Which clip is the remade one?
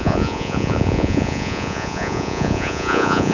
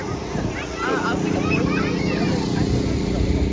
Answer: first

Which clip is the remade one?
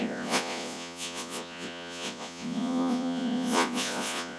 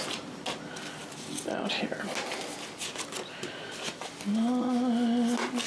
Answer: first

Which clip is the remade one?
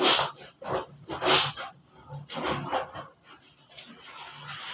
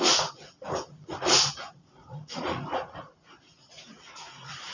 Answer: second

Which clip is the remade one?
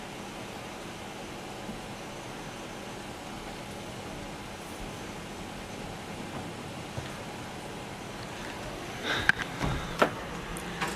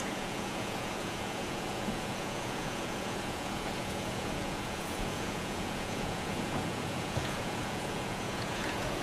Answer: second